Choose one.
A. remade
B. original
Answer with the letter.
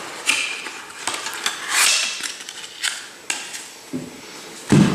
B